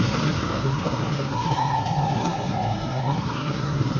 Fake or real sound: fake